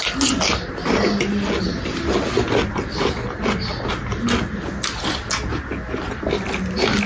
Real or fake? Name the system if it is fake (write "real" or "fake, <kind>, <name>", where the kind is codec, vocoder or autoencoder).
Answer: real